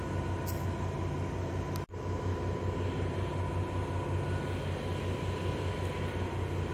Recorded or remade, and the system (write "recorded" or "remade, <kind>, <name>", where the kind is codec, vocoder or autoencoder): recorded